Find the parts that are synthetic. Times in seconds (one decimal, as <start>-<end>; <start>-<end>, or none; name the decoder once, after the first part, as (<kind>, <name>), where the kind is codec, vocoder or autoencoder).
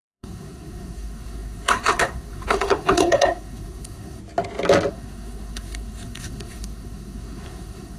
0.0-4.2 (codec, SNAC); 4.9-8.0